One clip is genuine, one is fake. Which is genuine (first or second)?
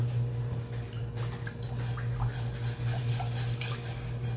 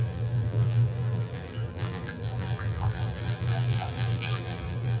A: first